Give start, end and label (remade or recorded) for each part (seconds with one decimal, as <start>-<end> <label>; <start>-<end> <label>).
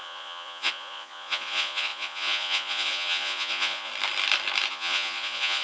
0.0-3.9 remade; 3.9-4.7 recorded; 4.7-5.6 remade